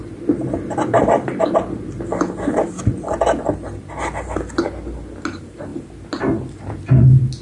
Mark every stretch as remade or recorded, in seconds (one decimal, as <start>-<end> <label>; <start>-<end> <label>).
0.0-7.4 recorded